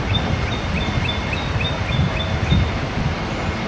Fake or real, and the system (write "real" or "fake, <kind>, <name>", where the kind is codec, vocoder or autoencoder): fake, vocoder, BigVGAN v2